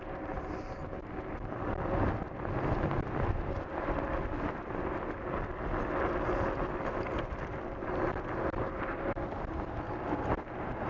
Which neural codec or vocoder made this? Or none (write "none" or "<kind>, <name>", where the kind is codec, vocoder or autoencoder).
none